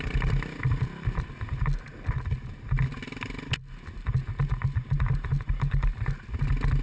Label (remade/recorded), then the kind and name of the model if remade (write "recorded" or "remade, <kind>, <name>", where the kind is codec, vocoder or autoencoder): recorded